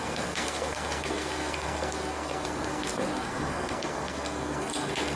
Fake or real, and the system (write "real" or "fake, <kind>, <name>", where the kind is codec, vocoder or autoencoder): fake, codec, SNAC